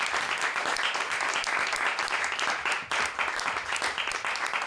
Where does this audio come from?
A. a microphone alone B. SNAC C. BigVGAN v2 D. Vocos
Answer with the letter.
A